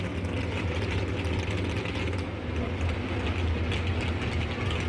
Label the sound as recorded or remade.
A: recorded